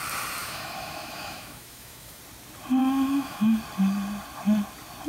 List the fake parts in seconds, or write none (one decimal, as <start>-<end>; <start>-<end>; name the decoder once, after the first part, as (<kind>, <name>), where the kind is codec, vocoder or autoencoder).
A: 0.4-2.2 (autoencoder, DAC-VAE); 2.8-3.6